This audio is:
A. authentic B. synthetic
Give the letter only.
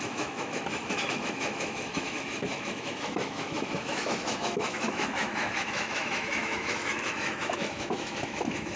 B